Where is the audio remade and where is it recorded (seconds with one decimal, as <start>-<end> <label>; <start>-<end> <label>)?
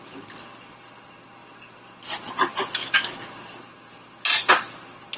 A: 0.0-5.2 recorded